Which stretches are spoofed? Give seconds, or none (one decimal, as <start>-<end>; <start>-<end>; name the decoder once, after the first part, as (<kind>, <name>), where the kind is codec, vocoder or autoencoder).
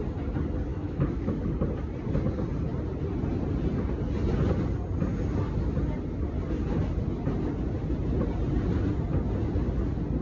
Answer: 0.7-1.4 (autoencoder, DAC-VAE)